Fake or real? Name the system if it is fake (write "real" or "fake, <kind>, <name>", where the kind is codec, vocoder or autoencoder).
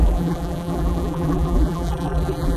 fake, vocoder, BigVGAN v2